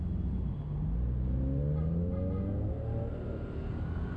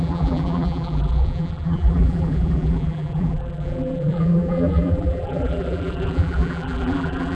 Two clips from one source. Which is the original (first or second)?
first